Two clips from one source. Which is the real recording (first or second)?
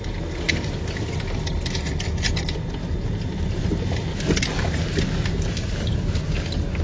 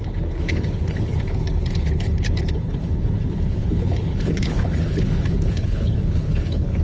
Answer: first